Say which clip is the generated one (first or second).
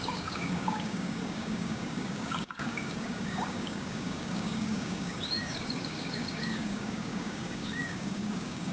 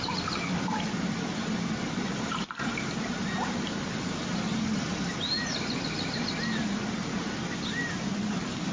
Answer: first